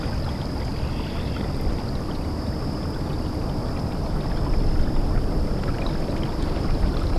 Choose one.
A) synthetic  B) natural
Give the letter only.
B